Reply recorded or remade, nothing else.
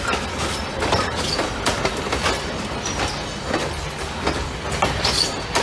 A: recorded